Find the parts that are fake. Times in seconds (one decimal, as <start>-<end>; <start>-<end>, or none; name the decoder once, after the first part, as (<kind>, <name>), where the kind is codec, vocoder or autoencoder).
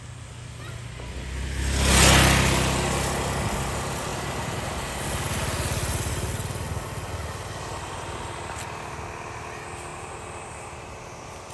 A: 4.1-4.7 (vocoder, BigVGAN v2); 9.9-11.0